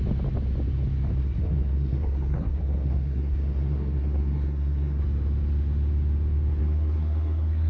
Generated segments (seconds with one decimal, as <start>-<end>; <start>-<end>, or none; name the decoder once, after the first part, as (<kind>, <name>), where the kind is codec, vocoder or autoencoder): 1.2-5.0 (codec, SNAC); 6.6-7.7